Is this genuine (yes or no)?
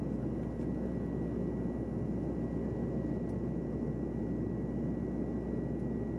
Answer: yes